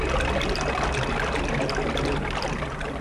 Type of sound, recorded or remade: recorded